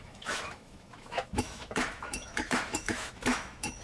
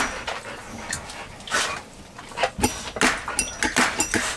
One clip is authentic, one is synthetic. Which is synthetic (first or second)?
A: first